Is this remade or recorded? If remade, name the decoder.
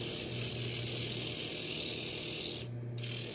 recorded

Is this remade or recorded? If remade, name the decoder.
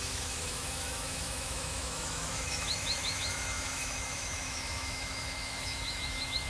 remade, autoencoder, DAC-VAE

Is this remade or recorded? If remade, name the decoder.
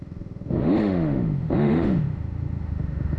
remade, autoencoder, DAC-VAE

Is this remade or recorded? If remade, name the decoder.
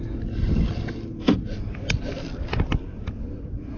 recorded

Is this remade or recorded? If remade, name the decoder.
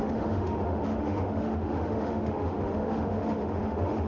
remade, autoencoder, DAC-VAE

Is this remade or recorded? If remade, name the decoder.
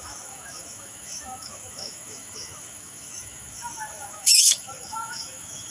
remade, autoencoder, DAC-VAE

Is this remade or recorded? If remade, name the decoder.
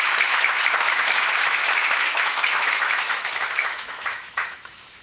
remade, autoencoder, DAC-VAE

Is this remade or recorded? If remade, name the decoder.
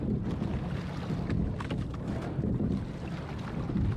recorded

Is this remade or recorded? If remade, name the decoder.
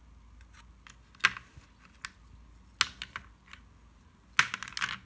recorded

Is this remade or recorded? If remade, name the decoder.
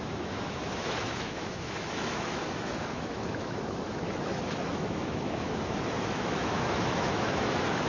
remade, autoencoder, DAC-VAE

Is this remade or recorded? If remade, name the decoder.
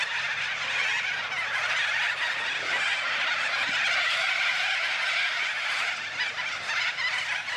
recorded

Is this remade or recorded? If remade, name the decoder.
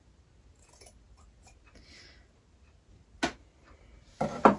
recorded